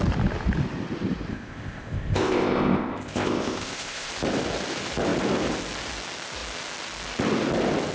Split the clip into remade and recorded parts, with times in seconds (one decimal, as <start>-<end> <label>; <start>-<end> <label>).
0.0-1.3 recorded; 1.3-4.1 remade; 4.1-7.9 recorded